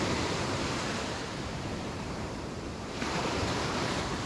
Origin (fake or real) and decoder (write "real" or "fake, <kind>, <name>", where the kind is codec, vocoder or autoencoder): fake, vocoder, BigVGAN v2